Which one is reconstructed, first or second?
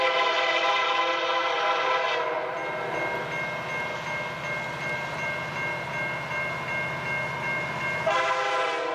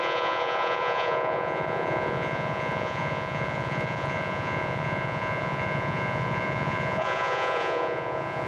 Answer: second